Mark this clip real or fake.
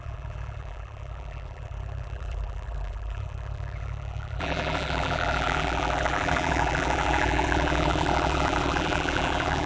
fake